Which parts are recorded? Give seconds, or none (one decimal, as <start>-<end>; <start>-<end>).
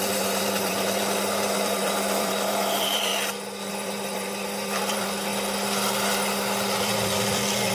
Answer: 3.1-3.7; 5.3-6.8